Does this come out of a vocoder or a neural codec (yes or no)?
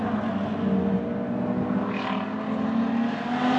no